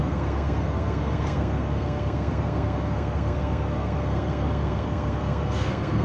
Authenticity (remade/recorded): remade